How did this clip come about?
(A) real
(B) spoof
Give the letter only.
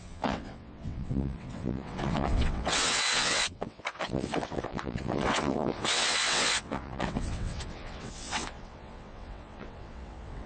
B